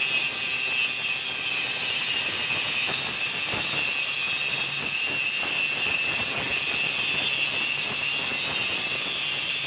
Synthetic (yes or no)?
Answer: no